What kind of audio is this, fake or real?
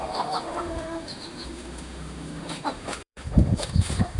fake